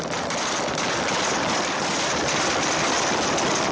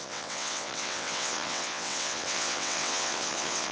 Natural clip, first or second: first